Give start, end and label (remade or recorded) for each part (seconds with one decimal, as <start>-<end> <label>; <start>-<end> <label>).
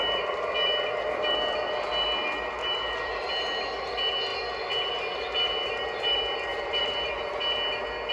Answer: 0.0-2.6 recorded; 2.6-3.2 remade; 3.2-6.5 recorded; 6.5-7.4 remade; 7.4-8.1 recorded